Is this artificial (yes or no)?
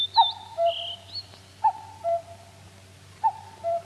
no